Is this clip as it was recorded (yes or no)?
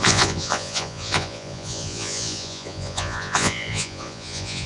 no